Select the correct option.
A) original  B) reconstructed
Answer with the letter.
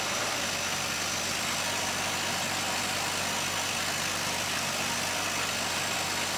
A